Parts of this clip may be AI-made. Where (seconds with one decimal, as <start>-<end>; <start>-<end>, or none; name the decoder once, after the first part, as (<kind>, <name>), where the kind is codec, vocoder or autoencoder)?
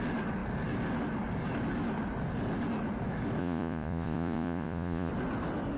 3.4-5.1 (vocoder, Vocos)